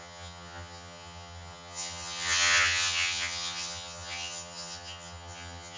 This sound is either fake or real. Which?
fake